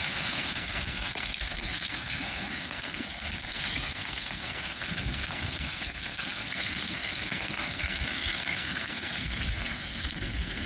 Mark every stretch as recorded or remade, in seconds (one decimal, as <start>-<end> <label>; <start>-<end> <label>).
0.0-10.7 remade